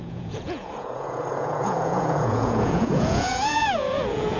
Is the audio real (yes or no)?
no